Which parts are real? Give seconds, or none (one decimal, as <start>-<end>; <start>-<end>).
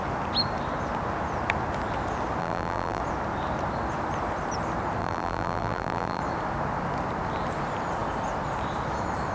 0.0-2.4; 3.0-5.0; 6.2-9.3